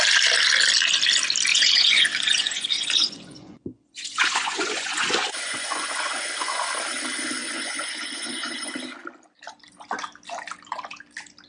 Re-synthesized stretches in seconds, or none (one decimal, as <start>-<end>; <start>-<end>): 1.5-6.6; 7.4-8.7